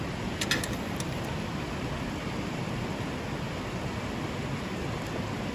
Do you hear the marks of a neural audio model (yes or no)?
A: no